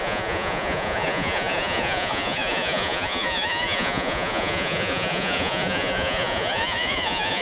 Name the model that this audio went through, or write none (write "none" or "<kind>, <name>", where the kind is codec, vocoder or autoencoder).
vocoder, Vocos